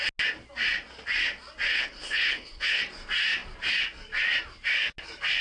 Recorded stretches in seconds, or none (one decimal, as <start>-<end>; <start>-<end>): 0.0-1.7; 2.8-5.4